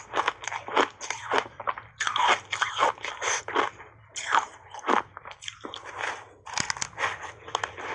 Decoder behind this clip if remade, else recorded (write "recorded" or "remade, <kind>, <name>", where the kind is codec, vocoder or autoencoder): recorded